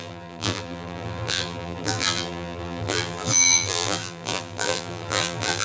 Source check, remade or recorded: remade